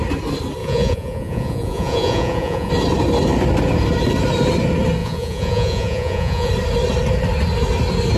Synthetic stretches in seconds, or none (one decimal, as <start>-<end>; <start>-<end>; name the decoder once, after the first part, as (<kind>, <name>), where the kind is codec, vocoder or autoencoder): 0.6-2.7 (vocoder, Vocos); 5.0-6.5